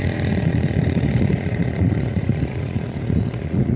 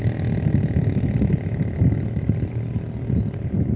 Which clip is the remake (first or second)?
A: first